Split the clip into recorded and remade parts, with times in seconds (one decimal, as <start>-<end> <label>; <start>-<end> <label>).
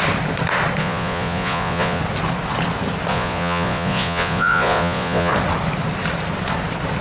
0.0-0.8 recorded; 0.8-2.0 remade; 2.0-3.1 recorded; 3.1-5.3 remade; 5.3-7.0 recorded